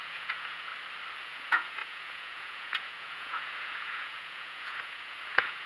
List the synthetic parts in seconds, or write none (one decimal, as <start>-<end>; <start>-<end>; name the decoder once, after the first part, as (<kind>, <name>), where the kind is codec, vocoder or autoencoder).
0.0-0.7 (vocoder, Vocos); 1.2-5.7